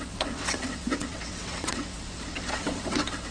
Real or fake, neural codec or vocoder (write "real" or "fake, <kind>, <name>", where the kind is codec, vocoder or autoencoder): fake, vocoder, WaveNeXt